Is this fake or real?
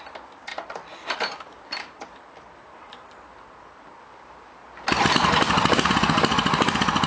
fake